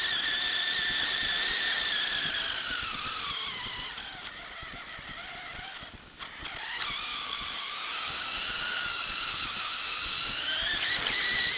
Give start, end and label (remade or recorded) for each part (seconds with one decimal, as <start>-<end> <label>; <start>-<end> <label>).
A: 0.0-7.1 recorded; 7.1-10.5 remade; 10.5-11.6 recorded